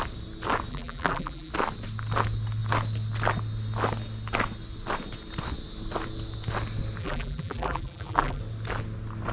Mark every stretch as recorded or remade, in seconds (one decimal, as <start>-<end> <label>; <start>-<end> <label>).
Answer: 0.0-0.7 recorded; 0.7-1.5 remade; 1.5-7.0 recorded; 7.0-8.4 remade; 8.4-9.3 recorded